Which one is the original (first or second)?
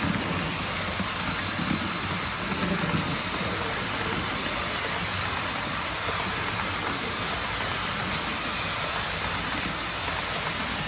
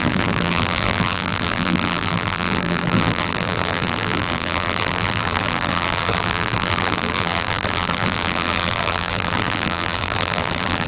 first